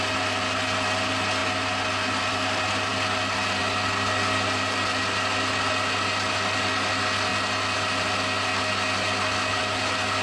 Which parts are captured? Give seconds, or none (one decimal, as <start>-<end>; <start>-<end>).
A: 0.0-10.2